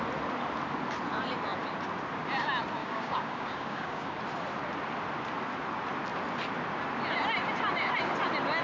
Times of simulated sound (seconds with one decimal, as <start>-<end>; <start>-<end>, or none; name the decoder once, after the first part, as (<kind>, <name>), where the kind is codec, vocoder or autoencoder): 2.8-4.2 (codec, DAC)